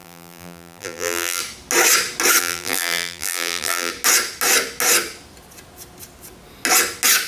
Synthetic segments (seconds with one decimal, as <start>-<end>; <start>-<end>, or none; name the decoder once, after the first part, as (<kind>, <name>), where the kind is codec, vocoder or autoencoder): 0.0-1.4 (vocoder, BigVGAN v2); 2.4-3.9